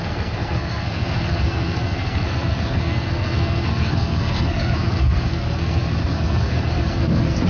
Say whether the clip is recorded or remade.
remade